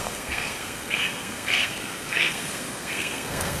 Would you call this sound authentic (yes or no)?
no